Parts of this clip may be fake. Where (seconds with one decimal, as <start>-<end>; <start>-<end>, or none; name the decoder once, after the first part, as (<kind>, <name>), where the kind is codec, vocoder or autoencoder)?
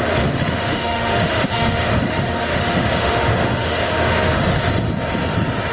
0.0-4.5 (autoencoder, DAC-VAE)